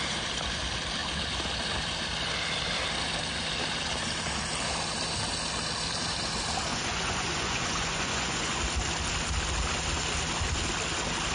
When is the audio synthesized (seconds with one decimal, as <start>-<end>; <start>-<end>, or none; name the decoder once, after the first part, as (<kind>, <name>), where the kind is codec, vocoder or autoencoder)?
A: 6.7-8.6 (vocoder, Vocos)